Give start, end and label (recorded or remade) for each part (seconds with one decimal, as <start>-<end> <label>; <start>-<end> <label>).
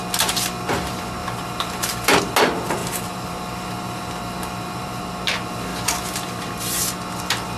0.0-1.2 recorded; 1.2-2.2 remade; 2.2-2.8 recorded; 2.8-5.0 remade; 5.0-7.6 recorded